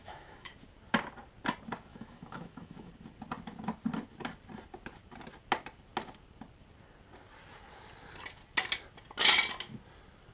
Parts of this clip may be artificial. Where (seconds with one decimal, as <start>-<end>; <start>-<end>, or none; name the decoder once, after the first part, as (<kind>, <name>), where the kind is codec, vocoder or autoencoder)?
0.0-0.5 (autoencoder, DAC-VAE); 1.9-2.9